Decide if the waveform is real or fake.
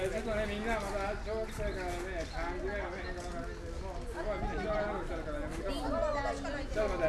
real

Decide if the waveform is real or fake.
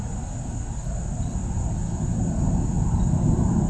real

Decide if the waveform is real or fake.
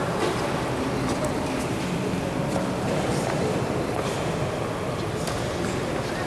real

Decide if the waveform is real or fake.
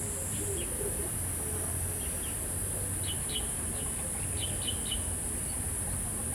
real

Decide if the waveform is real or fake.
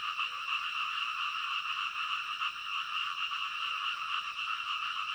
fake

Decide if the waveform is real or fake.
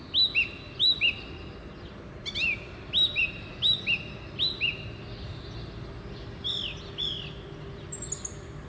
real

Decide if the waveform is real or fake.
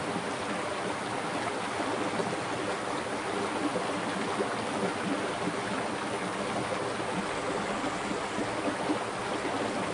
real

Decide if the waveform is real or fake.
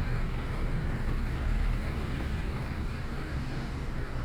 fake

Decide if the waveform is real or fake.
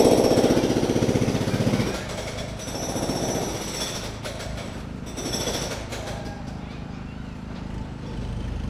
real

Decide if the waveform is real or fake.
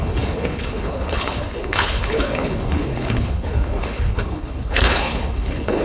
fake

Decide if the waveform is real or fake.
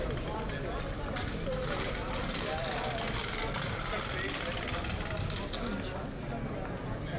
real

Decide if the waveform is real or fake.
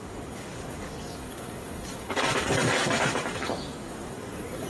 fake